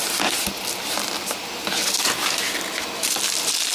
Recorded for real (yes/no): yes